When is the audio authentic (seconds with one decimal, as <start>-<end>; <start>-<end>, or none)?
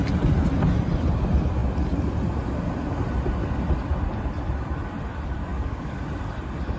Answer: 0.0-5.5; 6.0-6.8